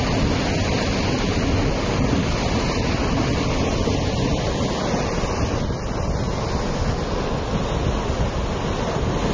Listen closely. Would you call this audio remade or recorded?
recorded